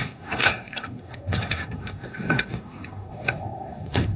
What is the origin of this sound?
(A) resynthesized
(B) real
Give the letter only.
A